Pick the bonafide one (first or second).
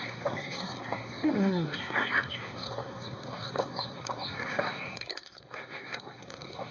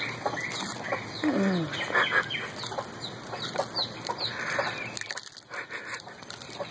second